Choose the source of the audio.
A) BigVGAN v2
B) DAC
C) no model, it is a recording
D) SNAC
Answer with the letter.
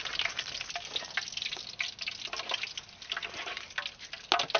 C